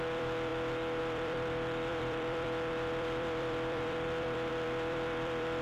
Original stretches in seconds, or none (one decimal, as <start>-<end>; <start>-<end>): 0.5-1.0